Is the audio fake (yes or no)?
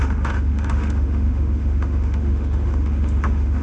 yes